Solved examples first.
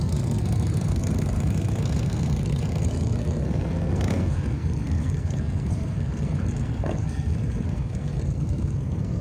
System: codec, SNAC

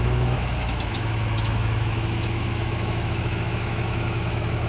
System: autoencoder, DAC-VAE